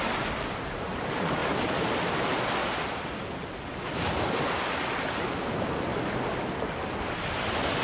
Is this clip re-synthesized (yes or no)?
no